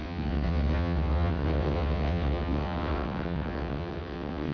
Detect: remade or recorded remade